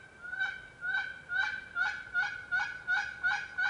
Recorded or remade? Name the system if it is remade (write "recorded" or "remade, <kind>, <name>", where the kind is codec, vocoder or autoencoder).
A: recorded